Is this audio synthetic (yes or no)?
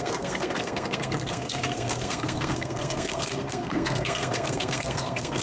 yes